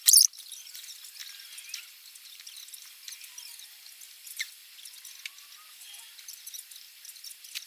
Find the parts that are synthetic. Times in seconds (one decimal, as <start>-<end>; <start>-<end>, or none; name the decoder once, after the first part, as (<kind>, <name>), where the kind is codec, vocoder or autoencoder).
0.0-1.2 (vocoder, BigVGAN v2); 1.9-4.6; 5.7-7.7